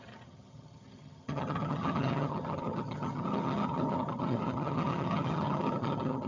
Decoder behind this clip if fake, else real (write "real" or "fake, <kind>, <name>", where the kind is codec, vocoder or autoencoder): fake, vocoder, HiFi-GAN